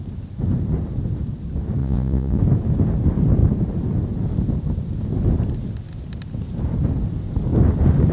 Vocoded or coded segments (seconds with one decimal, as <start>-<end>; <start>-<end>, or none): 1.8-2.4